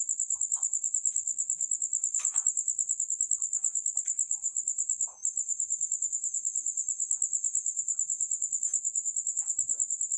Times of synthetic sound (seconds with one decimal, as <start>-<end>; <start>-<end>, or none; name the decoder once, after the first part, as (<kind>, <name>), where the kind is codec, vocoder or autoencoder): 0.0-10.2 (autoencoder, DAC-VAE)